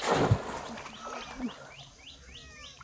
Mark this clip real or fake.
real